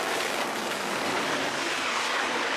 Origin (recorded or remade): remade